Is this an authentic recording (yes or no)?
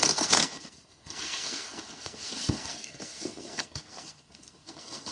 no